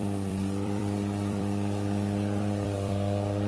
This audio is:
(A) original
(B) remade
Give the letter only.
B